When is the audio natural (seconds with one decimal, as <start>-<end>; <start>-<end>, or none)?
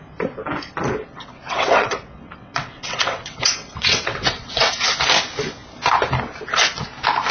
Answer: 0.0-1.1; 4.9-7.3